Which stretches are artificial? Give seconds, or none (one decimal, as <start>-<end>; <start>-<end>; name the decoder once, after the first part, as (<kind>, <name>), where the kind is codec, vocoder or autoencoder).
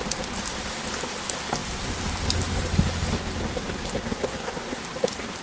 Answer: 4.0-4.8 (codec, SNAC)